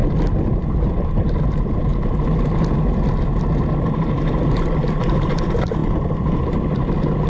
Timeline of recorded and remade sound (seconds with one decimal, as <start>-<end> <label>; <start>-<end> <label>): 0.0-0.5 recorded; 0.5-1.9 remade; 1.9-4.1 recorded; 4.1-5.8 remade; 5.8-6.4 recorded; 6.4-7.3 remade